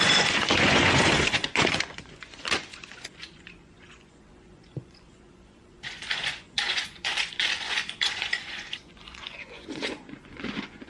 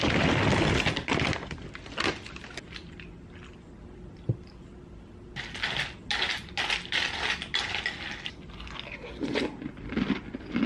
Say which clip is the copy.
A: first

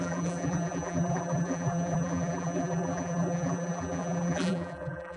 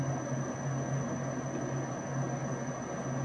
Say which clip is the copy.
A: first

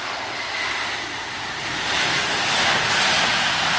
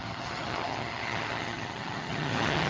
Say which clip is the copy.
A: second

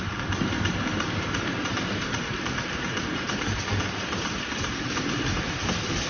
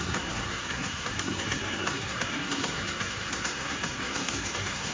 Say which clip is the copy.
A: second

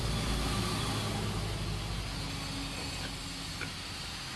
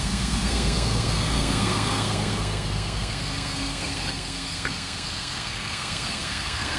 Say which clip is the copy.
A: second